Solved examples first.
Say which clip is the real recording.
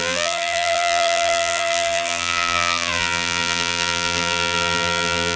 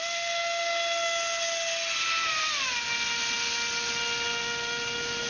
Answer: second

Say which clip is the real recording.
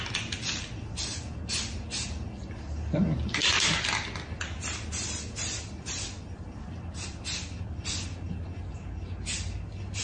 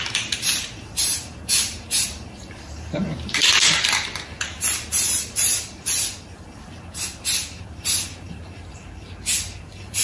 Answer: first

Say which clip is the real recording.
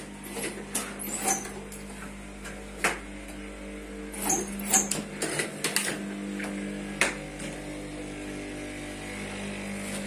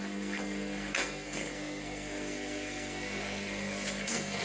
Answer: first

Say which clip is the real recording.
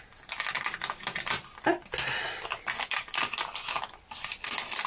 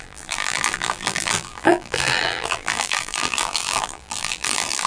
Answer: first